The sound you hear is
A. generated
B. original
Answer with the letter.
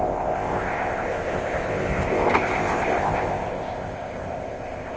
A